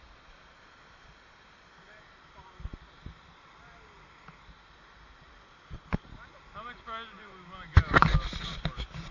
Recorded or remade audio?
recorded